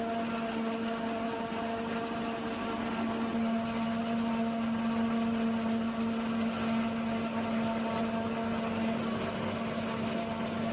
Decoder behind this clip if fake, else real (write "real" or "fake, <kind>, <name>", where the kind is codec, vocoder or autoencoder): real